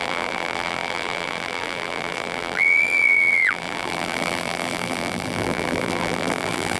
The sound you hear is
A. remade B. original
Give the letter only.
A